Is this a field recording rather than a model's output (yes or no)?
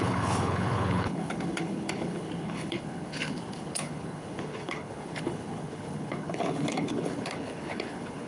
no